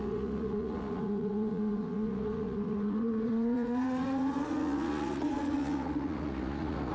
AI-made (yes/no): yes